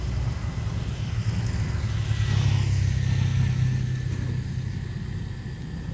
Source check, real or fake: real